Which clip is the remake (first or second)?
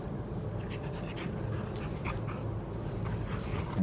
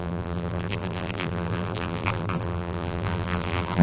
second